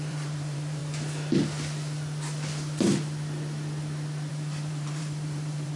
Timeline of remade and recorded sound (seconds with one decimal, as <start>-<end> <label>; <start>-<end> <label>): 0.0-0.8 remade; 0.8-4.3 recorded; 4.3-5.8 remade